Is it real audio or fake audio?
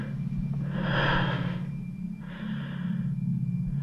real